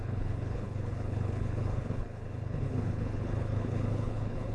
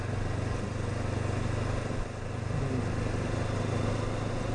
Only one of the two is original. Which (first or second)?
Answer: second